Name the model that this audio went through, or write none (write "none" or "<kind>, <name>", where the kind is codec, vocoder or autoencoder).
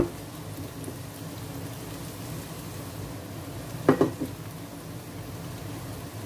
none